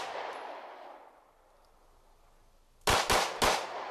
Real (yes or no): yes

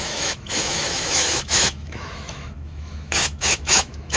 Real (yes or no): no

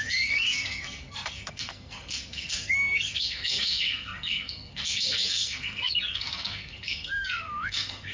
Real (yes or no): no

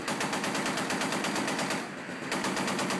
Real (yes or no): yes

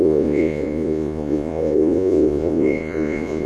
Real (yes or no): no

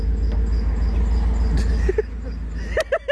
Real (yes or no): yes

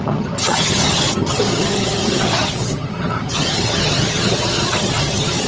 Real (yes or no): no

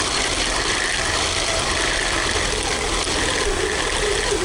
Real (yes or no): yes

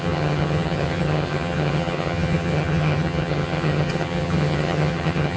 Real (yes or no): no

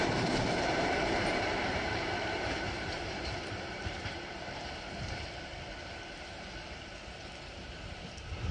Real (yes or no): no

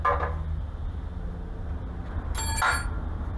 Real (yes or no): yes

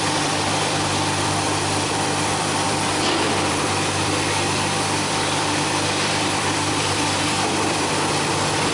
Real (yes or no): no